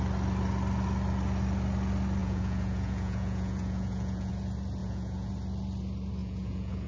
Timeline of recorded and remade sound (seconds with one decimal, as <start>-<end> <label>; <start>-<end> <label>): 0.0-2.2 recorded; 2.2-4.3 remade; 4.3-4.8 recorded; 4.8-5.3 remade; 5.3-6.2 recorded; 6.2-6.9 remade